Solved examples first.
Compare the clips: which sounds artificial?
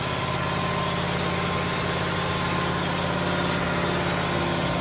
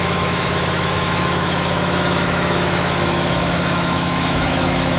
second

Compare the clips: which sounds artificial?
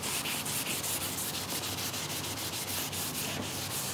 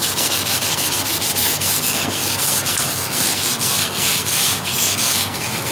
second